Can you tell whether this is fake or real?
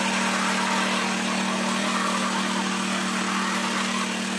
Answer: real